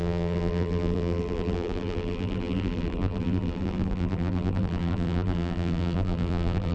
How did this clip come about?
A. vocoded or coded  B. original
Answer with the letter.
A